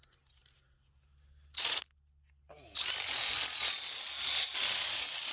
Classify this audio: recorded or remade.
recorded